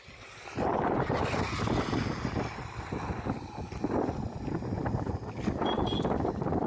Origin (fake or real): real